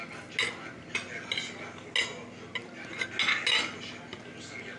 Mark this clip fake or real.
real